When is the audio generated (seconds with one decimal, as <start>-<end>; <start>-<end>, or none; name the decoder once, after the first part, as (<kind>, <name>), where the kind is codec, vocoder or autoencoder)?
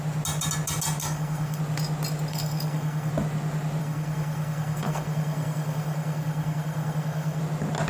1.0-1.6 (codec, SNAC); 2.3-3.1; 3.8-7.4